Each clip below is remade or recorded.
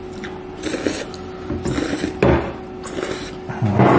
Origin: recorded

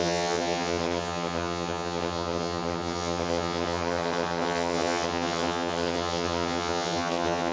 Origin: remade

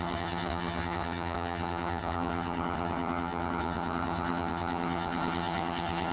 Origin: remade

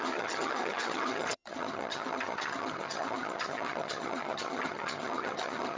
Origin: remade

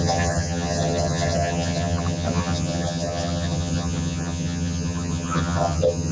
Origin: remade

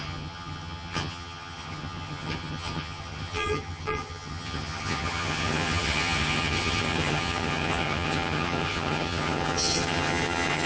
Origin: remade